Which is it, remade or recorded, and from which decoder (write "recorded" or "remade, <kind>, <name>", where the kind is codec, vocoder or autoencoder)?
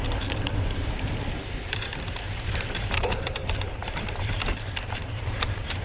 remade, vocoder, BigVGAN v2